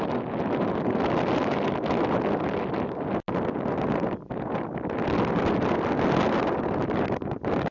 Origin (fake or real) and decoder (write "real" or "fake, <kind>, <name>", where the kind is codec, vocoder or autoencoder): real